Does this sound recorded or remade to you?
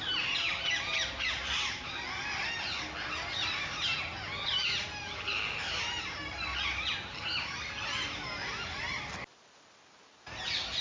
recorded